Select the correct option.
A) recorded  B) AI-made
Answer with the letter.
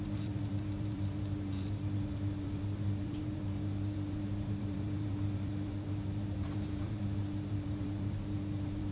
B